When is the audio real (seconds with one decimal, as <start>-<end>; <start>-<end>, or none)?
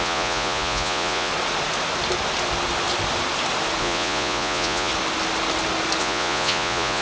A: 1.3-3.8; 4.9-6.0